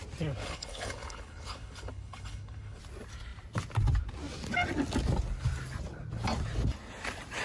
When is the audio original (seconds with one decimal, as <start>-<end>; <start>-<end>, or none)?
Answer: 0.0-0.4; 2.8-7.4